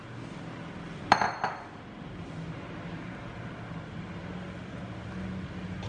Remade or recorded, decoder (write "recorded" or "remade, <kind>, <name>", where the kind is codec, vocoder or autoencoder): recorded